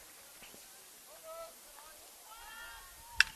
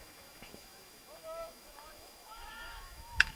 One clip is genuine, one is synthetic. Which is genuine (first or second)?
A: first